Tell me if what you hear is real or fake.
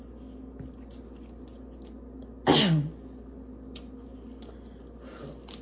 real